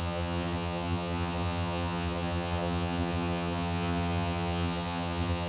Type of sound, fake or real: fake